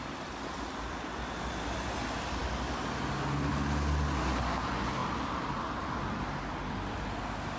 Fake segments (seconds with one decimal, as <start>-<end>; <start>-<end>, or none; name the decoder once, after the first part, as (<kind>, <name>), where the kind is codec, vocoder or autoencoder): none